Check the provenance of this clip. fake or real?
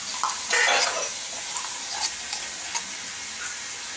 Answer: real